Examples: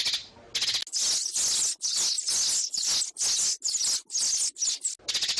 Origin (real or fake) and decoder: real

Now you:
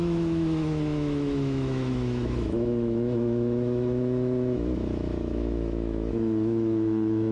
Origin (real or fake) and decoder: fake, autoencoder, DAC-VAE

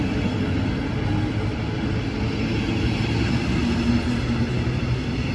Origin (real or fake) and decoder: real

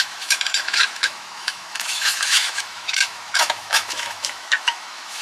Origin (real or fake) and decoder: fake, autoencoder, DAC-VAE